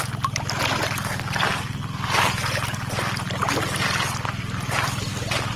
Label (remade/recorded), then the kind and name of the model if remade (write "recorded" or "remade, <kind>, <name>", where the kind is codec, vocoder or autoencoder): recorded